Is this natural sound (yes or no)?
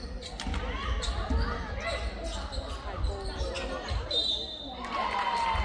yes